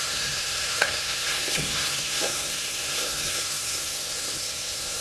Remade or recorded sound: remade